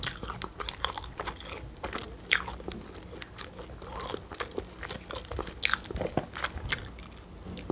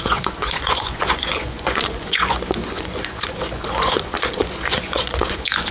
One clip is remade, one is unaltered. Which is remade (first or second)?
second